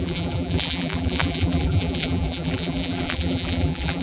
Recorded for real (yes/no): no